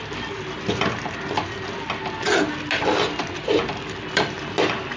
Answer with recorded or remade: recorded